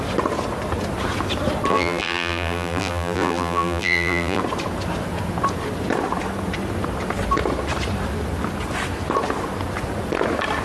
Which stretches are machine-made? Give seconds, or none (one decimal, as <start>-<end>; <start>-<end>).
1.7-4.4